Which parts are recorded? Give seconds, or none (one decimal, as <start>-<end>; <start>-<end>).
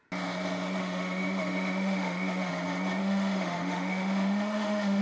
0.0-0.8; 2.5-3.0